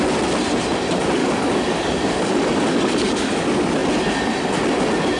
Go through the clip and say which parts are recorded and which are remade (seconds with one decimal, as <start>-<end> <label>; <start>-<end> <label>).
0.0-1.2 recorded; 1.2-3.3 remade; 3.3-5.2 recorded